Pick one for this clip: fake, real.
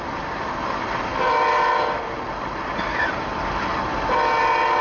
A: real